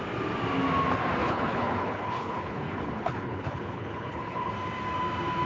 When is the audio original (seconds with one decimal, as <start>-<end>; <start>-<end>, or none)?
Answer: 0.0-1.2; 4.5-5.5